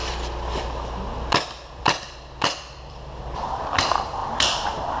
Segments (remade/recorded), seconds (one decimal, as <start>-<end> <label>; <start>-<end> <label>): 0.0-1.7 recorded; 1.7-4.2 remade; 4.2-5.0 recorded